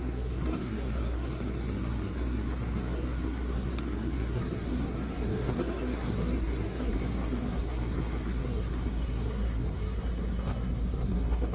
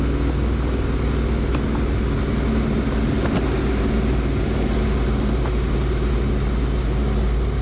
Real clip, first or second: second